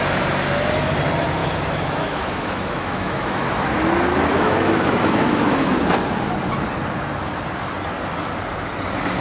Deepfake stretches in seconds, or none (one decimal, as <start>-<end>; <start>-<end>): 1.4-3.5; 4.1-5.8